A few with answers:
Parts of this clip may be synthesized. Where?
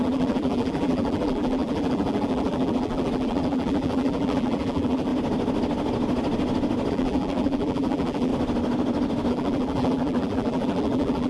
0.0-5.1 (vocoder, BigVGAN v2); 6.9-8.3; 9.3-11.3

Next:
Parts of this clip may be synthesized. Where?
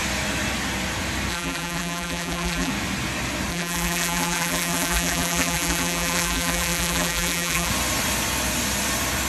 1.3-2.7 (vocoder, BigVGAN v2); 3.5-7.7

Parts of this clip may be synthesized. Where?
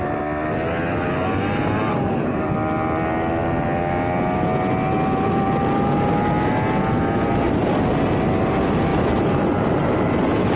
8.9-10.2 (vocoder, BigVGAN v2)